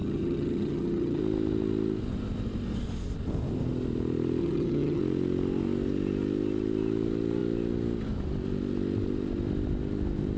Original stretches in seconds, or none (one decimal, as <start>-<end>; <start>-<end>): 1.2-4.4; 5.0-10.4